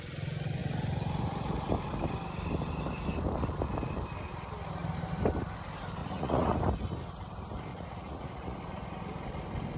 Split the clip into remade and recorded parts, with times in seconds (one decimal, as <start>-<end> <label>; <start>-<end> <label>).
0.0-6.0 recorded; 6.0-6.6 remade; 6.6-7.7 recorded; 7.7-8.6 remade; 8.6-9.8 recorded